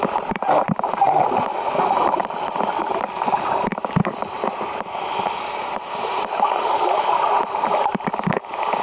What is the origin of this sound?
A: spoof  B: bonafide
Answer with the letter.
B